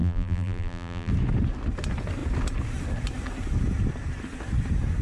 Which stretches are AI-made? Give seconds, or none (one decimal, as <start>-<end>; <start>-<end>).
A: 0.0-1.1